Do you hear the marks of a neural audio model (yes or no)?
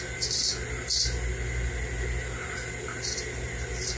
no